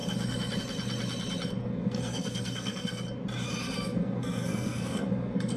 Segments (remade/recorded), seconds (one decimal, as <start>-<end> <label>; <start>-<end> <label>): 0.0-1.6 recorded; 1.6-3.0 remade; 3.0-3.9 recorded; 3.9-5.6 remade